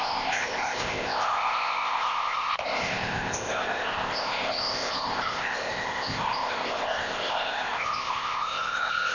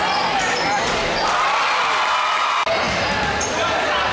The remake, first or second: first